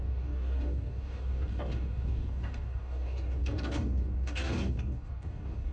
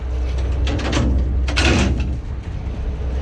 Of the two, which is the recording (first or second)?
second